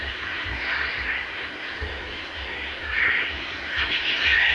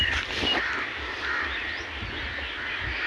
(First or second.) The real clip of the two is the second